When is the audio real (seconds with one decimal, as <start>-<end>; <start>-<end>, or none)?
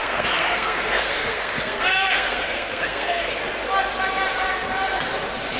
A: 3.4-5.6